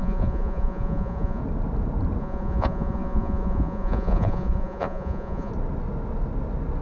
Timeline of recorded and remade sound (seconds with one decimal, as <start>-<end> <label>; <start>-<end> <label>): 0.0-1.4 remade; 1.4-2.2 recorded; 2.2-5.5 remade; 5.5-6.8 recorded